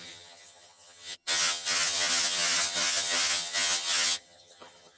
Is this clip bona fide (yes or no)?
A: no